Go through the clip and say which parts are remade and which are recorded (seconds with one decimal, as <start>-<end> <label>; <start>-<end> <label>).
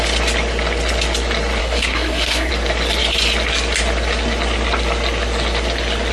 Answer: 0.0-1.6 recorded; 1.6-2.5 remade; 2.5-6.1 recorded